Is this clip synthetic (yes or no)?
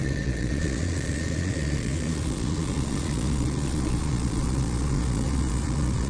yes